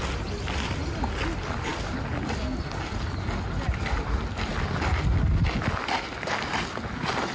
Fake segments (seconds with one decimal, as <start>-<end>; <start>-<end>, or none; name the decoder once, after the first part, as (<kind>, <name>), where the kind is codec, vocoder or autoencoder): none